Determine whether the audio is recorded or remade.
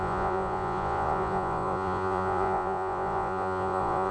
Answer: remade